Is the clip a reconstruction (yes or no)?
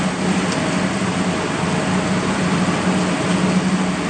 no